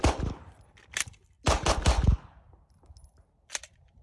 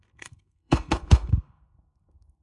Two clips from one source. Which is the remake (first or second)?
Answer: second